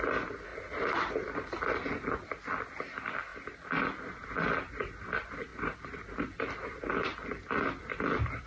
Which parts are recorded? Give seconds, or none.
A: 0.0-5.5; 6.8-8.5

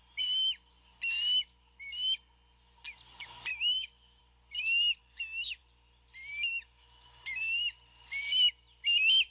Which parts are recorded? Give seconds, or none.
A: 0.0-3.5; 4.2-5.0; 5.6-6.3; 7.4-9.3

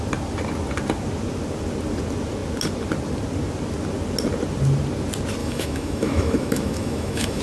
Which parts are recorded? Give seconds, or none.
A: 0.0-5.4

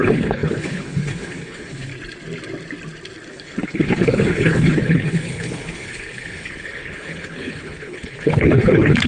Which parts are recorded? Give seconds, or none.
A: 1.9-3.3

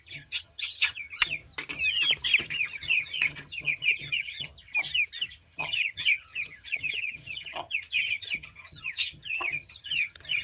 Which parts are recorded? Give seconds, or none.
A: 1.4-2.4; 4.5-5.4

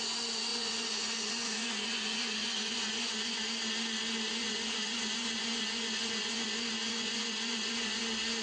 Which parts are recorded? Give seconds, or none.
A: 0.0-0.5; 3.4-4.3; 8.0-8.4

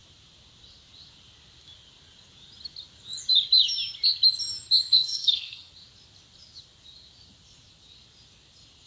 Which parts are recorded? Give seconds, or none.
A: 0.0-4.8; 5.7-8.9